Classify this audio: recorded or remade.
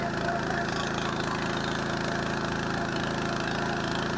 recorded